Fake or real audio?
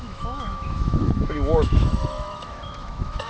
fake